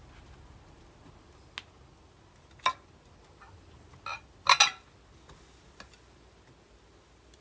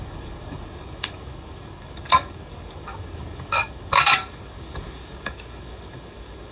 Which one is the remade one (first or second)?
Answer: second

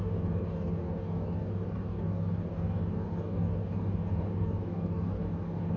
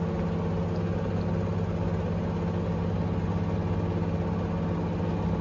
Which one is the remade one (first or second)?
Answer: first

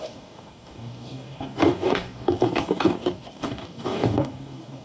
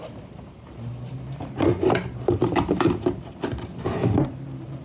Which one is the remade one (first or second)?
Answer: first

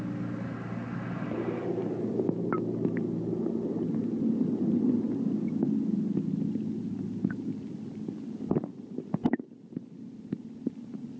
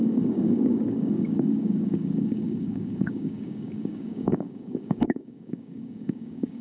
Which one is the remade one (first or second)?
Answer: second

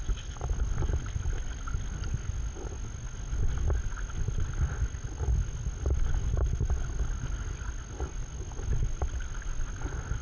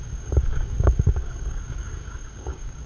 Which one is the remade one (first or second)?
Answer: second